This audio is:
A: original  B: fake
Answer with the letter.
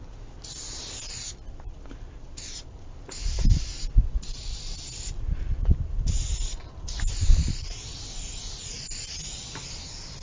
A